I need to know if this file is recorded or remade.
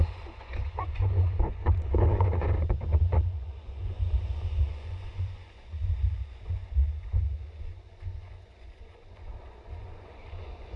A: remade